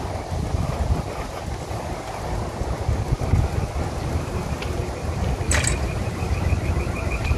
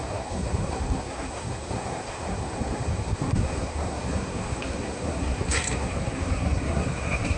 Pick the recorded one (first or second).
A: first